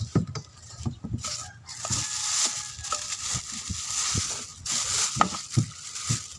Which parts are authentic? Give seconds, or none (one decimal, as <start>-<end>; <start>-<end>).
0.0-6.4